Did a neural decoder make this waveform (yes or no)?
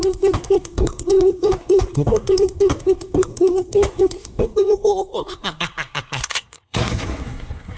yes